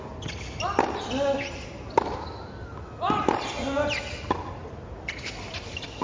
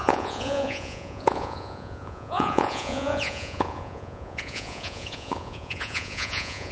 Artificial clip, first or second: second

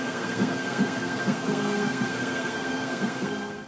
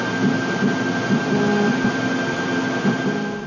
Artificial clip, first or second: first